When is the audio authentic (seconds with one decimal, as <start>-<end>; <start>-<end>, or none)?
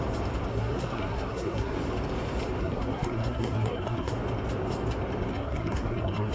0.0-0.5; 1.8-2.6; 4.1-5.3